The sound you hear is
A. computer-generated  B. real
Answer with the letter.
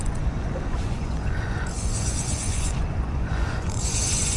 A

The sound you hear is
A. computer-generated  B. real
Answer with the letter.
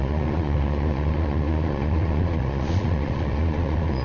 A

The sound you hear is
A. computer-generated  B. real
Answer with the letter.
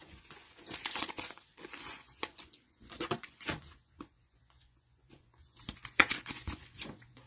A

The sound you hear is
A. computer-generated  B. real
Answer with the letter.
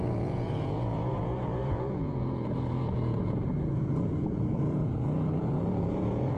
A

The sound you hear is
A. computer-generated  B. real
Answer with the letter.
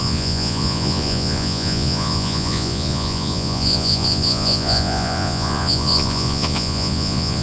A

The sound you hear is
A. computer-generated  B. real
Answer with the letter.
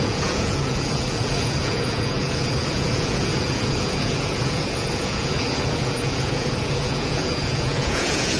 A